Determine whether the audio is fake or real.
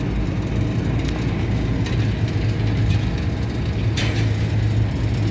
real